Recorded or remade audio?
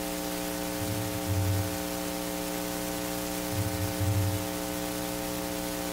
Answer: recorded